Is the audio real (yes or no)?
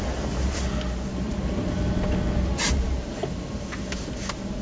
yes